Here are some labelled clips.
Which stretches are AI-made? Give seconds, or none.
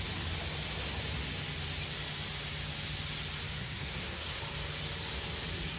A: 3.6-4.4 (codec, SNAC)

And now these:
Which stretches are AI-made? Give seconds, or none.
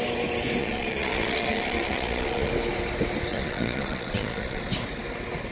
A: 0.6-2.5 (vocoder, Vocos); 3.3-4.6